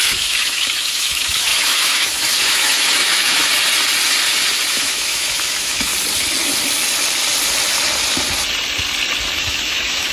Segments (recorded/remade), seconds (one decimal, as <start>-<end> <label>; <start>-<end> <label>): 0.0-3.4 remade; 3.4-4.7 recorded; 4.7-5.9 remade; 5.9-9.4 recorded; 9.4-10.1 remade